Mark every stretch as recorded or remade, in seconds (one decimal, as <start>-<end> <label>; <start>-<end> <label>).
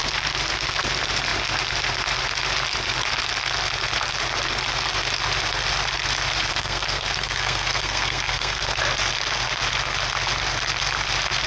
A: 0.0-6.5 recorded; 6.5-8.8 remade; 8.8-11.5 recorded